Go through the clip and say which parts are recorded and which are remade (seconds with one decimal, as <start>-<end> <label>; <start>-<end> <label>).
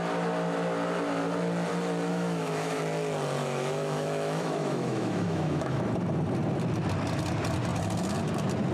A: 0.0-2.1 recorded; 2.1-2.8 remade; 2.8-3.4 recorded; 3.4-5.8 remade; 5.8-8.7 recorded